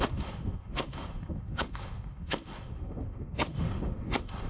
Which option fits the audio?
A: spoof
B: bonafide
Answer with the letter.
A